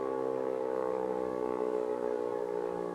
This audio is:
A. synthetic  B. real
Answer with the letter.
A